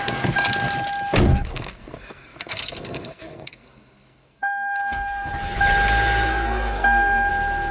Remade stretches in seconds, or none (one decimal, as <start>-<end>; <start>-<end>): 1.3-5.3; 6.3-7.3